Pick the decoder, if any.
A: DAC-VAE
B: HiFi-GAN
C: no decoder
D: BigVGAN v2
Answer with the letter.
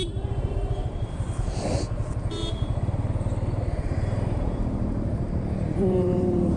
D